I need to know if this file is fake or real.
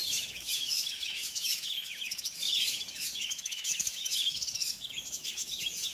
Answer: fake